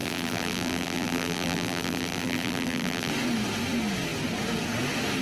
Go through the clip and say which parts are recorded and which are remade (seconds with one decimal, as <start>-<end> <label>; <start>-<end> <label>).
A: 0.0-3.1 remade; 3.1-5.2 recorded